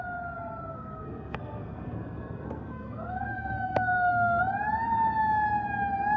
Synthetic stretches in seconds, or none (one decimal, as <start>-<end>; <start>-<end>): 0.7-4.4